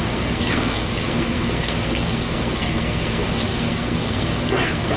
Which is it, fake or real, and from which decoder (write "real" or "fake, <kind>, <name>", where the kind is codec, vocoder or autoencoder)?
fake, codec, SNAC